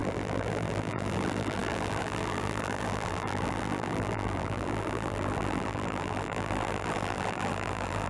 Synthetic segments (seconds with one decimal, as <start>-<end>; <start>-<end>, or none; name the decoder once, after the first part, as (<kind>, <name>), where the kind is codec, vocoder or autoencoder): 0.0-8.1 (vocoder, BigVGAN v2)